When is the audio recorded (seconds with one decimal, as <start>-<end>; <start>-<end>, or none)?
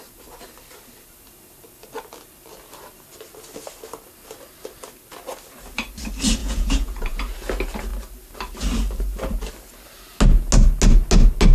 0.0-6.4; 7.2-11.5